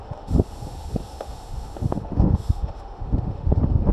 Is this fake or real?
fake